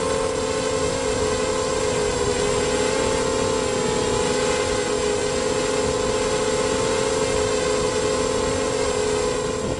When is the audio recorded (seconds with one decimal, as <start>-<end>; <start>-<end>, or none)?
0.0-9.8